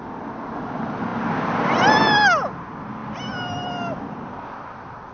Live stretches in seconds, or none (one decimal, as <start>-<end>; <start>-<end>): 0.0-5.1